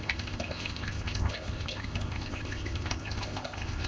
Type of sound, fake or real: fake